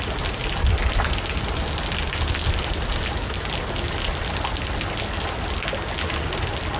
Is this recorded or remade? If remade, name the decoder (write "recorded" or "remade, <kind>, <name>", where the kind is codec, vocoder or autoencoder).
recorded